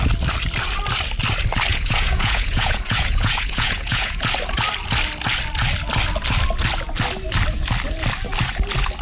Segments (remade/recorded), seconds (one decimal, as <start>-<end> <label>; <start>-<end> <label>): 0.0-1.7 recorded; 1.7-4.2 remade; 4.2-9.0 recorded